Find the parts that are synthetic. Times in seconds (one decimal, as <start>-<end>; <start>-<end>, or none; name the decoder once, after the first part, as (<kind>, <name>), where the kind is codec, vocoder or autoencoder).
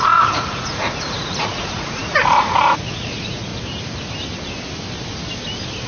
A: 0.0-3.5 (vocoder, Vocos)